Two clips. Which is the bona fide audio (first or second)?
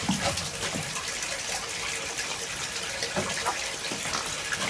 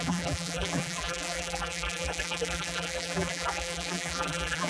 first